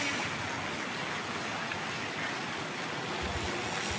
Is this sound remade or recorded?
recorded